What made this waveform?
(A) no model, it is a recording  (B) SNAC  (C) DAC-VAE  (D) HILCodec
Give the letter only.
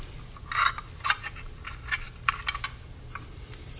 A